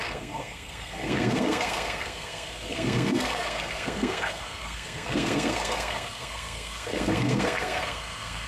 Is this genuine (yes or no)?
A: no